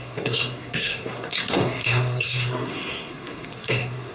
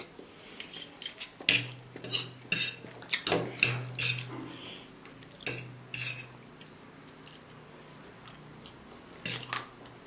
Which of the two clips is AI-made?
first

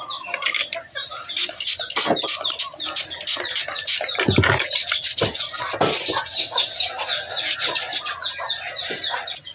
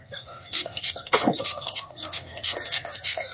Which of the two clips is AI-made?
second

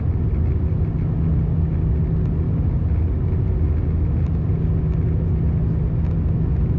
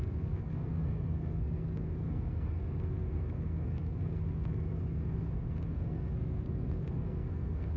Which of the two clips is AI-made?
second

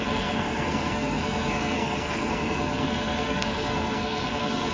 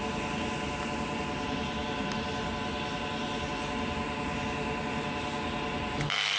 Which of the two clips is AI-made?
first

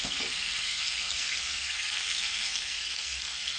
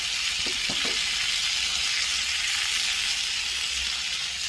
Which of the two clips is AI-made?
first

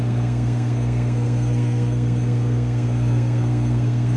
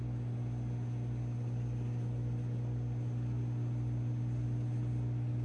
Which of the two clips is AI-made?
first